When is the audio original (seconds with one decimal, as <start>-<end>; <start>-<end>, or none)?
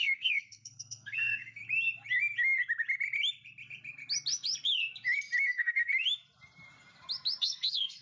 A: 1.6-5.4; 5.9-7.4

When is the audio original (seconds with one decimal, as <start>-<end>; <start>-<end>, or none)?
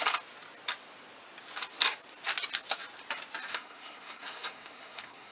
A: 0.0-3.5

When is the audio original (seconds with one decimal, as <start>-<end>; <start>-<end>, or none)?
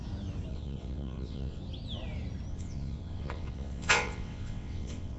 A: 0.0-0.5; 1.6-2.5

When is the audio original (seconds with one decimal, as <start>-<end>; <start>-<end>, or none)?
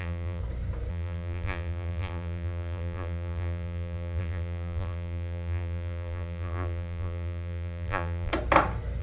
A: 0.4-0.9; 8.3-9.0